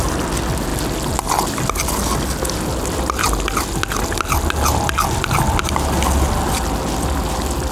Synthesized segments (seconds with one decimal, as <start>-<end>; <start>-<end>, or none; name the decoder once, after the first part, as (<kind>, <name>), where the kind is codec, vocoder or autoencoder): none